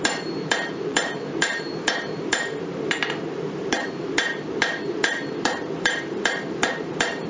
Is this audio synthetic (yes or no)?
yes